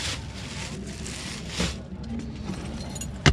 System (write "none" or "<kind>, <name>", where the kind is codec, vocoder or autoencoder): none